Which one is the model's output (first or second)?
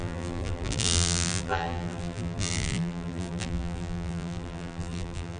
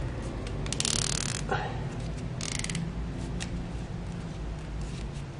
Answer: first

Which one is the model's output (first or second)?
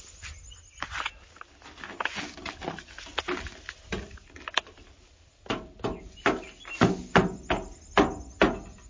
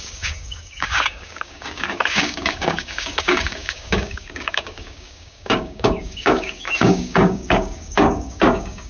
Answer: second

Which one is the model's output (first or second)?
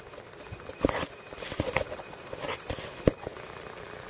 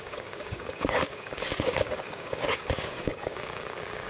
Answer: second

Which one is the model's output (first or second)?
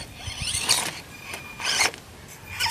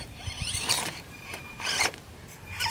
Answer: second